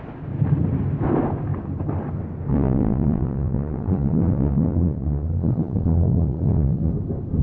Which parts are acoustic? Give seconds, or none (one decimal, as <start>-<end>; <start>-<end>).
0.0-2.5; 6.9-7.4